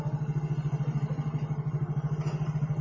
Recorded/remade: recorded